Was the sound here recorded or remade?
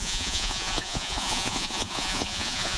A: remade